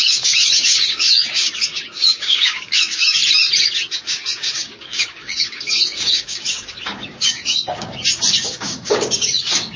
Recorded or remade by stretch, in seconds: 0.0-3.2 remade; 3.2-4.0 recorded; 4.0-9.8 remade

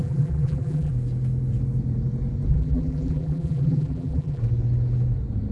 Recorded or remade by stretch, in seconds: 0.0-0.9 remade; 0.9-2.5 recorded; 2.5-4.4 remade; 4.4-5.5 recorded

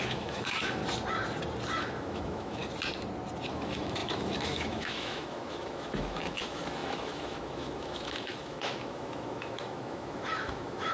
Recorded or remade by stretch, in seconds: 0.0-0.8 remade; 0.8-1.8 recorded; 1.8-2.6 remade; 2.6-3.5 recorded; 3.5-10.9 remade

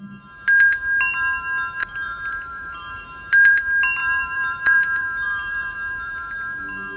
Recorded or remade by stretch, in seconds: 0.0-1.8 recorded; 1.8-3.6 remade; 3.6-4.0 recorded; 4.0-6.6 remade; 6.6-7.0 recorded

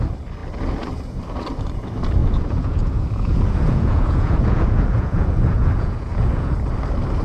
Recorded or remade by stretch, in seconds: 0.0-2.2 recorded; 2.2-6.5 remade; 6.5-7.2 recorded

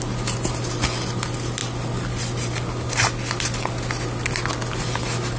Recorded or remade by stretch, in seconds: 0.0-5.4 recorded

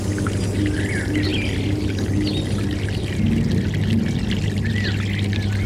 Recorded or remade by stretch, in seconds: 0.0-5.7 recorded

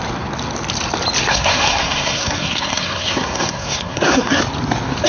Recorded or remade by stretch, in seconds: 0.0-1.3 recorded; 1.3-4.4 remade; 4.4-5.1 recorded